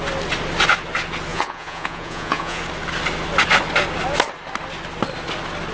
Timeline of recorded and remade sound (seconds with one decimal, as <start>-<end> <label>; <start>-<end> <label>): 0.0-1.3 recorded; 1.3-2.6 remade; 2.6-5.7 recorded